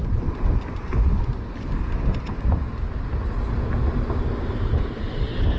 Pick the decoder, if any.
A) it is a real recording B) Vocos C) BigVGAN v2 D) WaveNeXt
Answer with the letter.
A